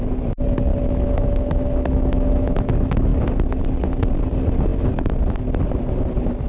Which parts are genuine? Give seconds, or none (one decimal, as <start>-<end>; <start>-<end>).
0.0-0.7; 2.6-6.5